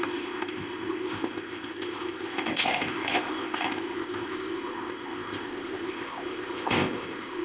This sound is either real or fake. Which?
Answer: fake